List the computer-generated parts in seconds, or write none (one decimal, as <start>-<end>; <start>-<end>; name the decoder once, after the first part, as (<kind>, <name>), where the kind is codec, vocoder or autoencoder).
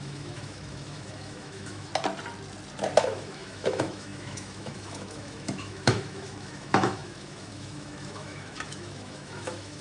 0.0-1.9 (autoencoder, DAC-VAE); 3.0-9.8